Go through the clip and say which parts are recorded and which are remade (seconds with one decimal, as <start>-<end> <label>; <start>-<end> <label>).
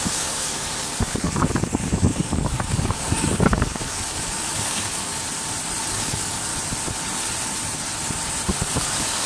0.0-5.1 remade; 5.1-5.9 recorded; 5.9-6.5 remade; 6.5-8.8 recorded; 8.8-9.3 remade